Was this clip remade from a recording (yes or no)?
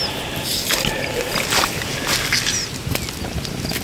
no